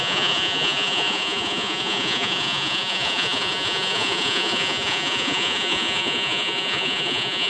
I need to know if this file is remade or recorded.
remade